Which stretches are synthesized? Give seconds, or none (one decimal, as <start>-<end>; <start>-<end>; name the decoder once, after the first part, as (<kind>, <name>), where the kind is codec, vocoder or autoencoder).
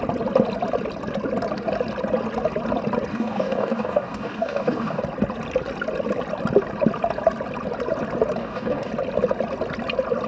3.1-5.0 (codec, DAC); 8.4-8.9